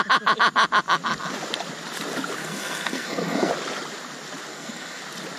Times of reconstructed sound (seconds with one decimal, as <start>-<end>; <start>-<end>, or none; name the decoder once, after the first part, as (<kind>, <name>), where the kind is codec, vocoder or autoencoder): 2.4-3.5 (codec, SNAC); 4.5-5.0